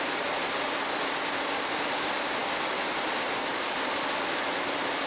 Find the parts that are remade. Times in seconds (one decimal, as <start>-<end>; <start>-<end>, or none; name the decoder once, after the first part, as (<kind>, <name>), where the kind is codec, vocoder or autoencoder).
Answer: none